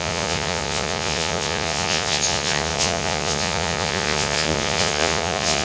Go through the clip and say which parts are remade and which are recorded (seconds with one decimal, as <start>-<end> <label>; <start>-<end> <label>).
0.0-5.6 remade